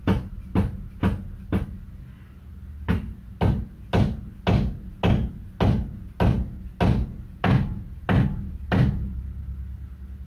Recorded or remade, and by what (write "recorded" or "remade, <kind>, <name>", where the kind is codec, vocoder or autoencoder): recorded